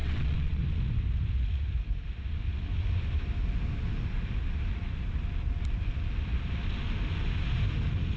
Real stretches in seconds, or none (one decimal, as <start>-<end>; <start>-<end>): 0.6-8.2